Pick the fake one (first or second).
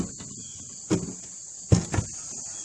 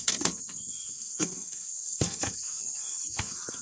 second